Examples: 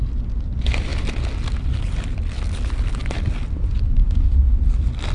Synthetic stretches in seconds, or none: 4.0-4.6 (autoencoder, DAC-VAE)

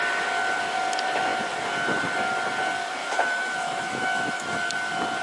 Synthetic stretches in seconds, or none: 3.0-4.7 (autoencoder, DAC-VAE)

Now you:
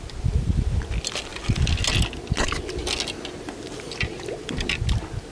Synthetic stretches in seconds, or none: none

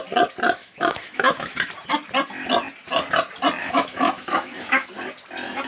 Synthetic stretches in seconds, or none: 0.6-1.7 (autoencoder, DAC-VAE); 3.6-4.9

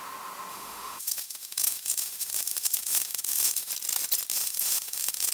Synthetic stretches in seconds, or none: 0.5-3.7 (autoencoder, DAC-VAE); 4.3-5.3